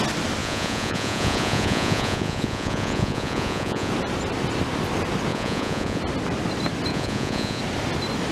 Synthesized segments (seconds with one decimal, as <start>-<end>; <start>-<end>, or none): 0.4-3.9; 5.3-6.0; 6.9-7.6